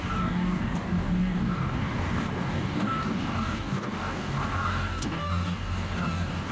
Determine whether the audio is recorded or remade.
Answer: remade